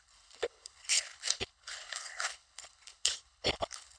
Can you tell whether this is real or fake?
fake